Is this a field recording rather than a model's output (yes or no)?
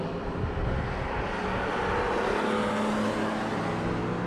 yes